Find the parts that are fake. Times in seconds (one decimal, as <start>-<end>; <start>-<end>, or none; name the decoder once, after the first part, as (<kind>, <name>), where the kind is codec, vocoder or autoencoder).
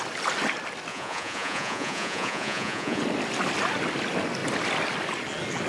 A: 0.9-3.0 (vocoder, Vocos)